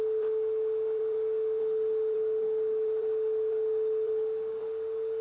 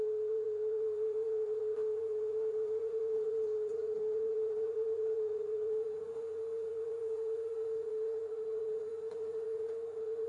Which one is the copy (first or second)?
second